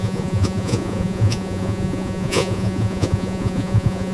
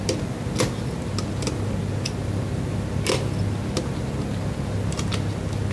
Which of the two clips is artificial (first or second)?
first